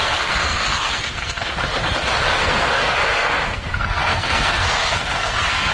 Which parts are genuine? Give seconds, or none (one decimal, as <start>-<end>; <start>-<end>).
1.5-2.3